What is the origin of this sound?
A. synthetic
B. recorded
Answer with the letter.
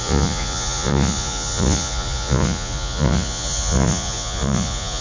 A